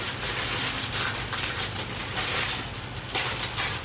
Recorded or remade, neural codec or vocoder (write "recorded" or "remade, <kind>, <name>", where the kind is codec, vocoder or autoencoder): recorded